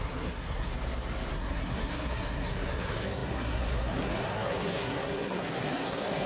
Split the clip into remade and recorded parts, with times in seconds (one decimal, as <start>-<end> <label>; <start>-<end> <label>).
0.0-0.7 remade; 0.7-1.3 recorded; 1.3-6.3 remade